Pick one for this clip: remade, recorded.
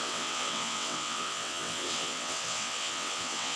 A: remade